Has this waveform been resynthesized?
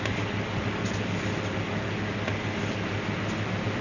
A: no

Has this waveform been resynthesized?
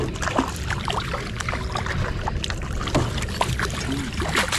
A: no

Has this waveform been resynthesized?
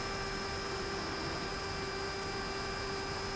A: no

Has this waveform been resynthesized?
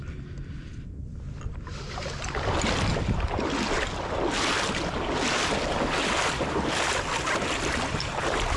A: no